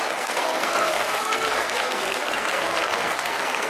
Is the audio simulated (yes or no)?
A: yes